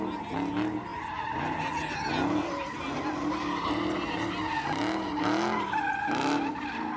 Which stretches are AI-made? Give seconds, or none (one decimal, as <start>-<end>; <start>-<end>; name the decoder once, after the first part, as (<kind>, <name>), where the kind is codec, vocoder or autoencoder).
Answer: none